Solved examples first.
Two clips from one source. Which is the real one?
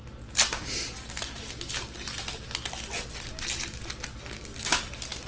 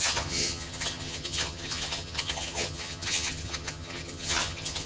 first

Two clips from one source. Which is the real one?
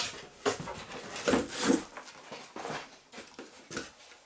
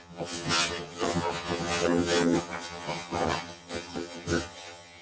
first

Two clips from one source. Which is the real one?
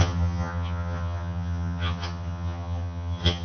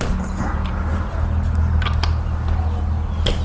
second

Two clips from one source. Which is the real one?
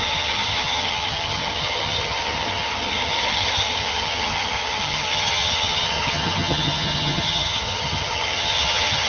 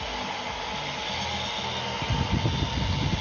second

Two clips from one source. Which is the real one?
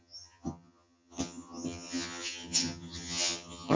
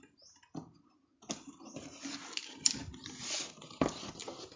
second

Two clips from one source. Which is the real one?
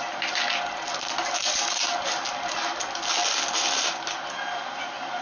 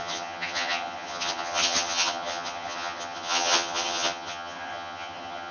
first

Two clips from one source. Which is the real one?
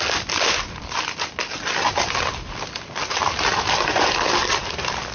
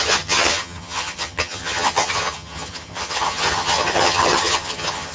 first